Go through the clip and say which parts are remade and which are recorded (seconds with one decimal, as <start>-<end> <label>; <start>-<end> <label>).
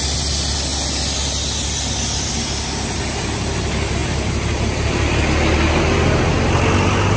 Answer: 0.0-7.2 recorded